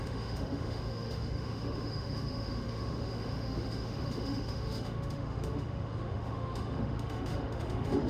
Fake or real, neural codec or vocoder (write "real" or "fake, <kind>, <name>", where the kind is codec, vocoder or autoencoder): fake, autoencoder, DAC-VAE